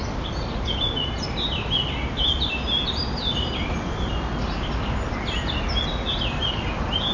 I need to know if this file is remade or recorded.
recorded